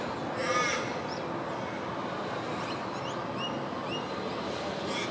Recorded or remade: recorded